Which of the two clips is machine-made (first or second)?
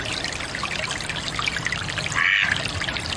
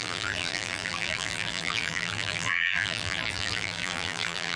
second